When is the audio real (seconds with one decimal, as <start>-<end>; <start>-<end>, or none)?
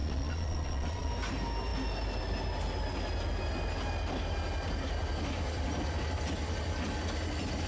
1.1-7.7